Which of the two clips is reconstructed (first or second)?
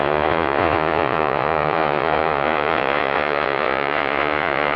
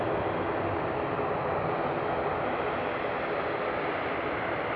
first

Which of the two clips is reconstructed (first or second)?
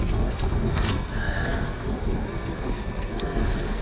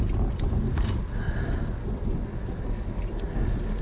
first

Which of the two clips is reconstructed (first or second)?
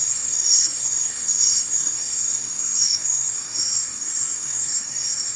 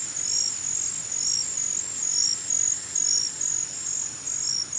first